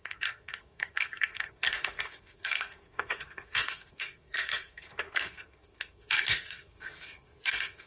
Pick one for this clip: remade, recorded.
remade